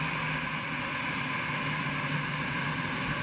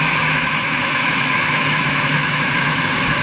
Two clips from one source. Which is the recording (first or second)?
first